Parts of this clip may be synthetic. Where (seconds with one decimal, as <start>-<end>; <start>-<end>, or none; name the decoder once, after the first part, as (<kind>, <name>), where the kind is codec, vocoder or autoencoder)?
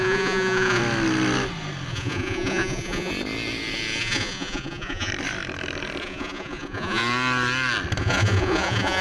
0.0-0.8 (vocoder, Vocos); 1.9-3.1; 4.0-5.1; 6.0-7.0; 8.0-9.0